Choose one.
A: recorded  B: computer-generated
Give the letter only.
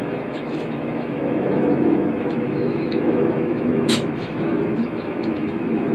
B